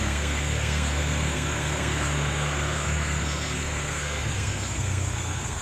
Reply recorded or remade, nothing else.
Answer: remade